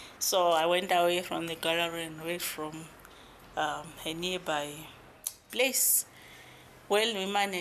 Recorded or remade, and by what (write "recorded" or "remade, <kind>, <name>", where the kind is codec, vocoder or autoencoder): recorded